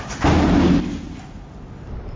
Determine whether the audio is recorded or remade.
recorded